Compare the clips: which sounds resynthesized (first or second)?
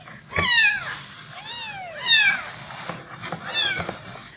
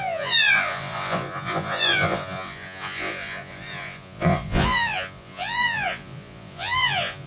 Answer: second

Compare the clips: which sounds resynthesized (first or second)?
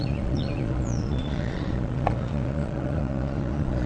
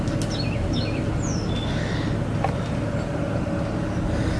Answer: first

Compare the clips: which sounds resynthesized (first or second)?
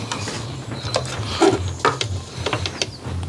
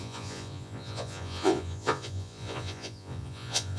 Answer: second